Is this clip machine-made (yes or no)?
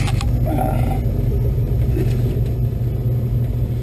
no